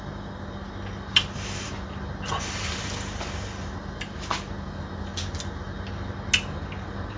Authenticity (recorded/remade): recorded